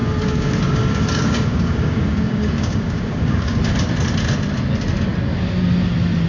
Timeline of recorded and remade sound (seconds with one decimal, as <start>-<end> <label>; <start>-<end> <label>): 0.0-3.6 remade; 3.6-6.3 recorded